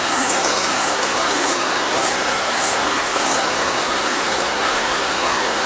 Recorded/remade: remade